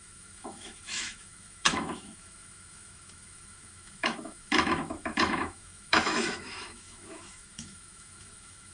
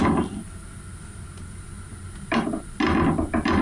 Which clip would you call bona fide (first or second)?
second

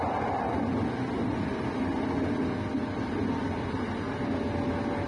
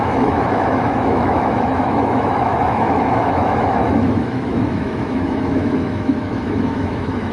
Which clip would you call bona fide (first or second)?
first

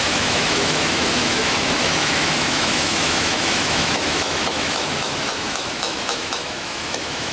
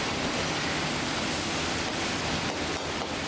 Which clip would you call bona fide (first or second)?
second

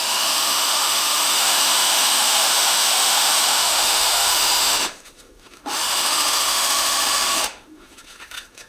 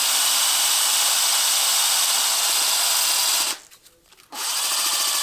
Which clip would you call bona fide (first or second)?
second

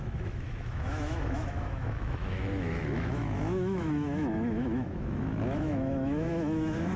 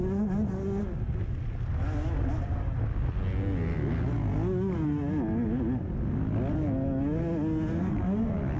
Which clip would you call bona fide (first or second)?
second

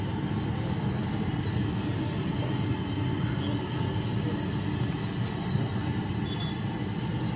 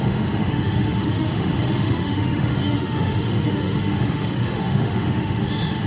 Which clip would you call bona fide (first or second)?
first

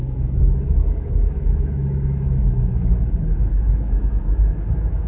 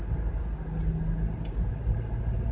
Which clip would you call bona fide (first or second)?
second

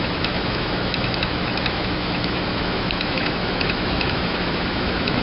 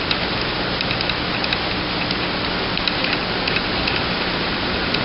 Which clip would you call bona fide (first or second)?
second